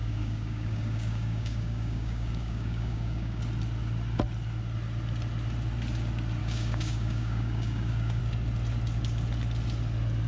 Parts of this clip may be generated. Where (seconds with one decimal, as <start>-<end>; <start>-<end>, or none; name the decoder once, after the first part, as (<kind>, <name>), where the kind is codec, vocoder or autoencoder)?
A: 0.0-3.4 (codec, DAC); 6.4-8.2